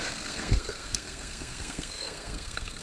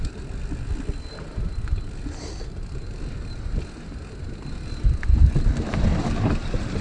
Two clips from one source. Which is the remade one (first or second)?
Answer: first